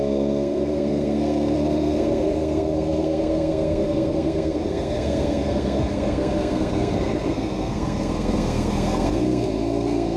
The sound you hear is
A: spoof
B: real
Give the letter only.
A